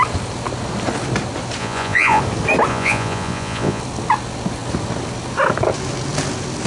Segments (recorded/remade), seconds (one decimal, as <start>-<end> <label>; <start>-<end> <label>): 0.0-1.6 recorded; 1.6-2.2 remade; 2.2-2.7 recorded; 2.7-3.8 remade; 3.8-6.7 recorded